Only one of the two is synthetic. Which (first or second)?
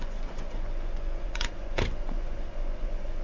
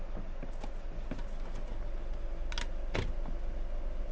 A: first